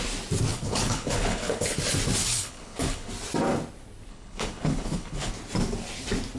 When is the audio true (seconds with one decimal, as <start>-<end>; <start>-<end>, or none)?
0.0-0.5; 1.8-2.2; 3.1-4.1; 5.3-6.4